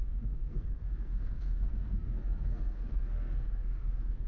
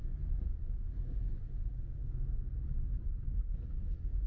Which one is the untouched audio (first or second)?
second